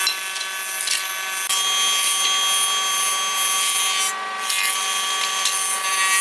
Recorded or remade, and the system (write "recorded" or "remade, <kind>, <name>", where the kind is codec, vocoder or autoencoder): recorded